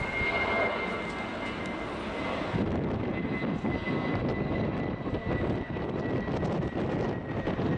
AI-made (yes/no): no